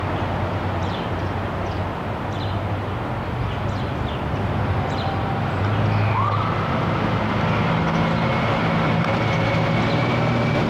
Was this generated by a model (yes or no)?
no